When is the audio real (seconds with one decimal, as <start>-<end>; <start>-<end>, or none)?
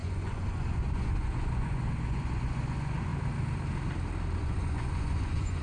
3.1-4.4